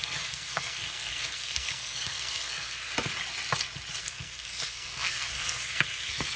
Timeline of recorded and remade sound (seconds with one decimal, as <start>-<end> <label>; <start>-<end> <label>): 0.0-2.9 remade; 2.9-4.0 recorded; 4.0-6.4 remade